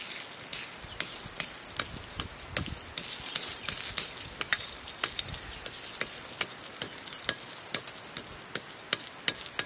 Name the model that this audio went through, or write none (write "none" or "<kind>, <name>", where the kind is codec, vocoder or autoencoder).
none